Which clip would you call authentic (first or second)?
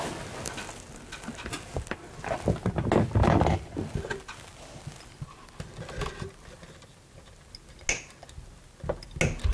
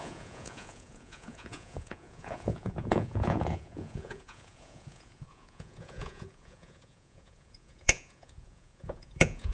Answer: first